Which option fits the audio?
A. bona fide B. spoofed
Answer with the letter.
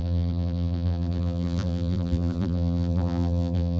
B